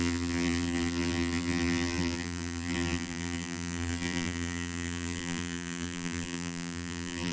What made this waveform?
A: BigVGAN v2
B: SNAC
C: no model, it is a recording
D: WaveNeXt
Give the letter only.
A